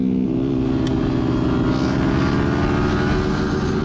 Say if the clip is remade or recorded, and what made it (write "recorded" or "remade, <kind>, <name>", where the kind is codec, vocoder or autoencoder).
recorded